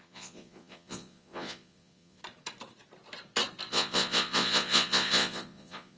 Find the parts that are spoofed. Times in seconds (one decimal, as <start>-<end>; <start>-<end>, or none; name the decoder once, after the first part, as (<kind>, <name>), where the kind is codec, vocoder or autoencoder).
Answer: 0.0-2.2 (vocoder, Vocos); 3.7-6.0